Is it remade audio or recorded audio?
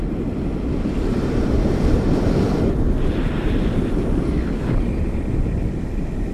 recorded